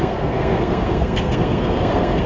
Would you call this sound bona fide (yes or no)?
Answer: no